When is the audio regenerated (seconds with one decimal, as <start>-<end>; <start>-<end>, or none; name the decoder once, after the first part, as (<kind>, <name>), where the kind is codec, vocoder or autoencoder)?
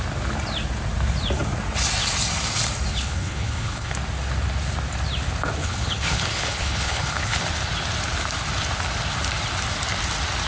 2.9-3.9 (codec, HILCodec); 5.6-7.4